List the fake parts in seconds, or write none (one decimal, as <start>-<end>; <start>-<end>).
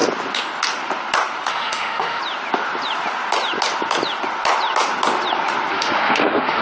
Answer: 1.5-2.2; 5.7-6.6